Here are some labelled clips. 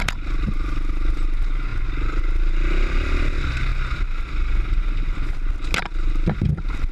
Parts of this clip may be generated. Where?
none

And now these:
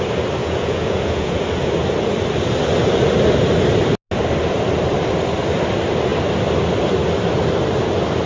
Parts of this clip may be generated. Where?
0.4-1.4 (vocoder, Vocos)

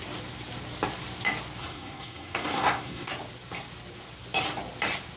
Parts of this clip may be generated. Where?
1.6-3.1 (codec, SNAC)

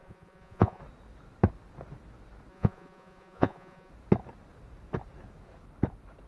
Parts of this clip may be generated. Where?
0.0-0.8 (vocoder, Vocos); 2.5-3.9

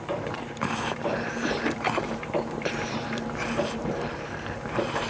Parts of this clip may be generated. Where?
0.0-5.1 (vocoder, BigVGAN v2)

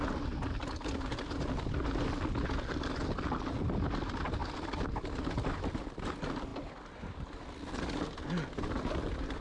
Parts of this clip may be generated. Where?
none